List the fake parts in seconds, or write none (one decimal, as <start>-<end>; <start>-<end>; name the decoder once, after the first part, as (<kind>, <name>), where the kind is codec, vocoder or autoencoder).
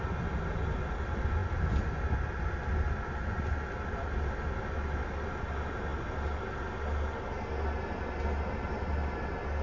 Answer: none